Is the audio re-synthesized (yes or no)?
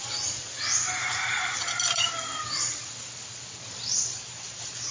yes